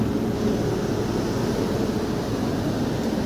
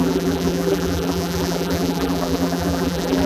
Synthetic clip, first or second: second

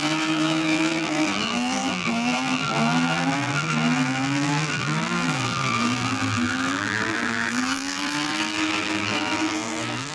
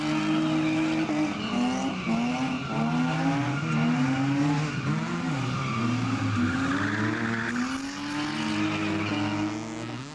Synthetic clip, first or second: first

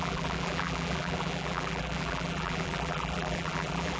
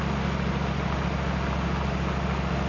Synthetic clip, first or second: first